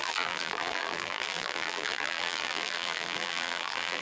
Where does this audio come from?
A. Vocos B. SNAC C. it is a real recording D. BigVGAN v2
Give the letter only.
D